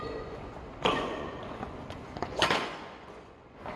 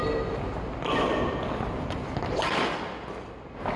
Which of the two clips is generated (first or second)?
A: first